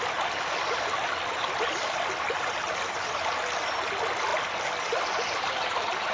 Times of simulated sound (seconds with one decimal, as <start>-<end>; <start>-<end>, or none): none